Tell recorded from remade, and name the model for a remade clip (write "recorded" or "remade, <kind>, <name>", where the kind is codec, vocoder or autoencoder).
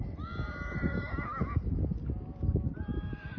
recorded